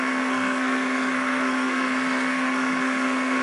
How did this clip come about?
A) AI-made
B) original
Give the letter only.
A